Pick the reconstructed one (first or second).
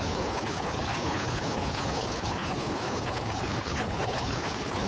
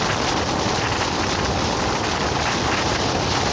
first